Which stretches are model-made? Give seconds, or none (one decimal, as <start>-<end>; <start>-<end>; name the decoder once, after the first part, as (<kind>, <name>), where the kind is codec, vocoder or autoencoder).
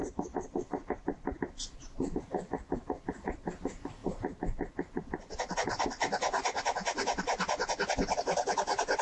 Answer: 0.0-1.7 (vocoder, BigVGAN v2)